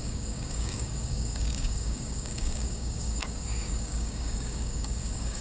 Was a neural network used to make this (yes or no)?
yes